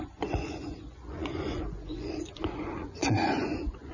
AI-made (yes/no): yes